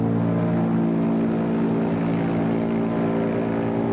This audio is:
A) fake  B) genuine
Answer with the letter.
B